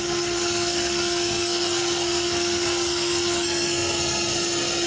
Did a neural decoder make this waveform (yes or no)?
yes